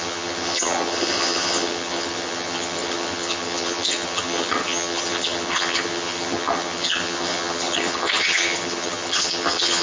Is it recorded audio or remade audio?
remade